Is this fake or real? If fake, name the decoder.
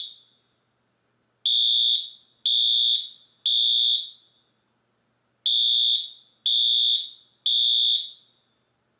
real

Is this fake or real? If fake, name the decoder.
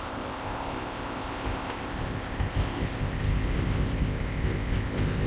fake, codec, ZipCodec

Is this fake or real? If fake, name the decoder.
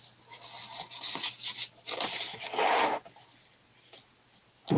real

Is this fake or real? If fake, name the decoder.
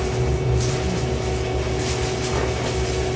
real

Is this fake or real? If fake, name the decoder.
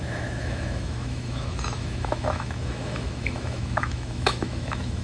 fake, autoencoder, DAC-VAE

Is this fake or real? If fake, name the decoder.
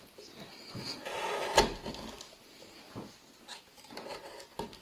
real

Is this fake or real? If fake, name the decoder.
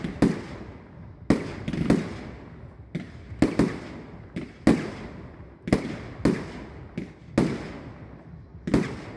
real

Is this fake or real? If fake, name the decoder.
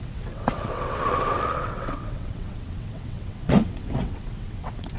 fake, vocoder, WaveNeXt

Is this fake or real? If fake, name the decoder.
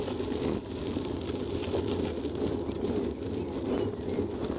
real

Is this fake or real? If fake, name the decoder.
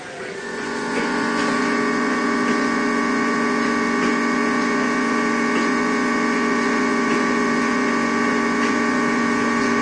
fake, vocoder, Vocos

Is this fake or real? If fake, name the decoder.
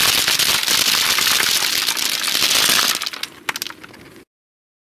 real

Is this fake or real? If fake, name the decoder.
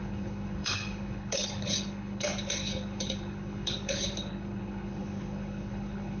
fake, codec, HILCodec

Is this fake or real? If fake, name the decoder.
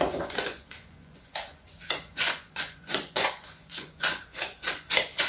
fake, vocoder, Vocos